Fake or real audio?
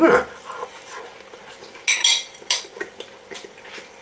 real